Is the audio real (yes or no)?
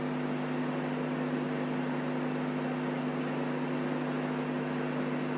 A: yes